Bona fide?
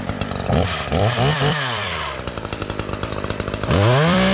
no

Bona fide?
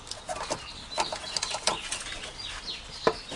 yes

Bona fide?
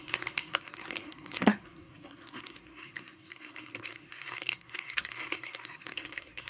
no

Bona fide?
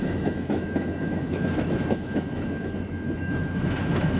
no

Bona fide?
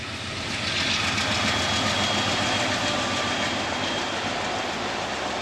yes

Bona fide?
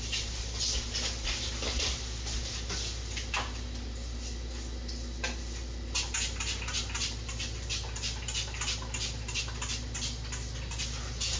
yes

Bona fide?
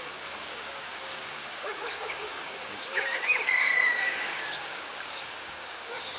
no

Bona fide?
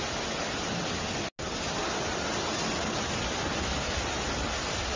yes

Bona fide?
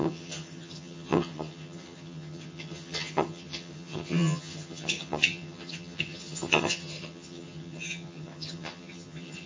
no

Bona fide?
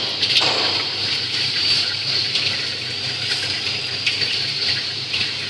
no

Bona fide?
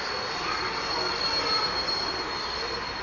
yes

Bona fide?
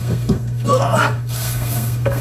no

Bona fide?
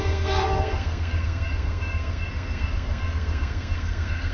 no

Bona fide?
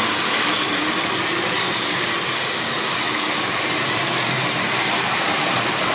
no